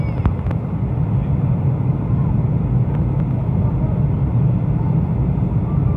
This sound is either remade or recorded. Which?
recorded